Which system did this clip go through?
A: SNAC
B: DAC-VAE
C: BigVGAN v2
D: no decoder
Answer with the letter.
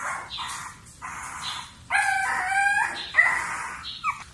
D